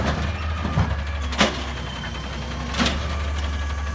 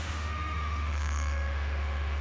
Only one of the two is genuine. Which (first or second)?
first